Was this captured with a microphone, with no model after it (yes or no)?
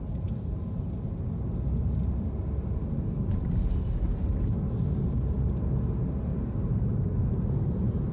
yes